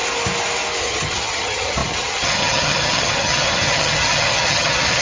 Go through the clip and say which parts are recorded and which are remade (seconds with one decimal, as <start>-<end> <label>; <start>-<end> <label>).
0.0-0.8 recorded; 0.8-5.0 remade